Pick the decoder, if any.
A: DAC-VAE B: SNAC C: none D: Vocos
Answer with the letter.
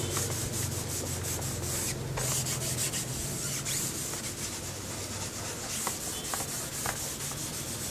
C